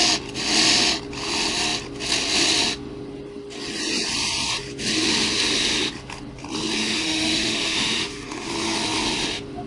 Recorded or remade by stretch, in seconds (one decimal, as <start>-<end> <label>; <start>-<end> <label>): 0.0-6.8 recorded; 6.8-8.5 remade; 8.5-9.7 recorded

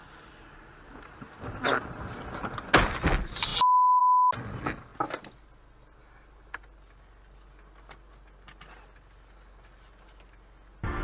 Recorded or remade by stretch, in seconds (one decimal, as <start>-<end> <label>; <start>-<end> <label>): 0.0-11.0 recorded

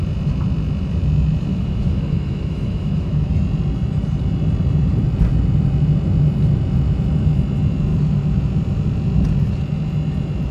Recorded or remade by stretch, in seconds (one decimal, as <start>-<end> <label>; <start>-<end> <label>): 0.0-1.5 recorded; 1.5-3.3 remade; 3.3-10.5 recorded

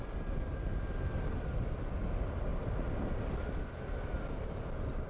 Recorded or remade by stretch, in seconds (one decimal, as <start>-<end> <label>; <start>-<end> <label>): 0.0-5.1 recorded

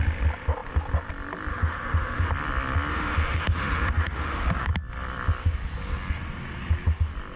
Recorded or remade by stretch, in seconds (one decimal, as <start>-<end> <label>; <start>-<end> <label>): 0.0-1.5 recorded; 1.5-2.3 remade; 2.3-2.9 recorded; 2.9-4.7 remade; 4.7-7.4 recorded

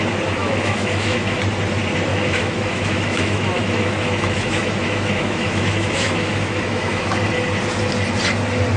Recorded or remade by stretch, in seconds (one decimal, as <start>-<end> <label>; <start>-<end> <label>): 0.0-0.4 recorded; 0.4-1.4 remade; 1.4-2.1 recorded; 2.1-7.2 remade; 7.2-8.8 recorded